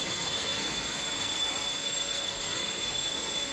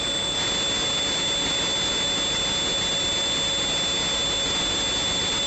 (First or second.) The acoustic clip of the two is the second